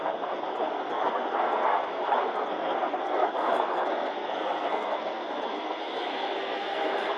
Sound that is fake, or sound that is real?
fake